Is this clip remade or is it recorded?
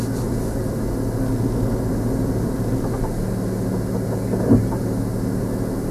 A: recorded